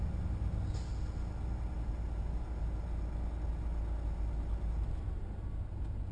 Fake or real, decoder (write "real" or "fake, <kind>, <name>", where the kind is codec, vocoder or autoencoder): real